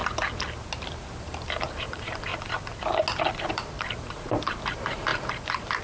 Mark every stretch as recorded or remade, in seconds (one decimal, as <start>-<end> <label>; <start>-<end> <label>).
0.0-0.9 recorded; 0.9-2.3 remade; 2.3-3.5 recorded; 3.5-5.8 remade